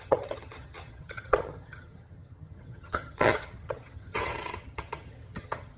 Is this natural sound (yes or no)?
no